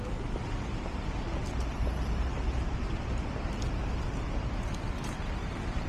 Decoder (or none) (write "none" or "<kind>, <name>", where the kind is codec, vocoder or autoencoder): none